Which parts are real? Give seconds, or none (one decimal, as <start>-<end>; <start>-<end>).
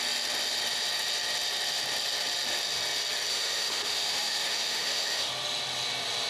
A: 0.0-3.3; 5.3-6.3